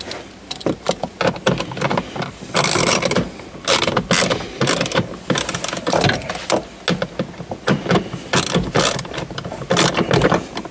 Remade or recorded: recorded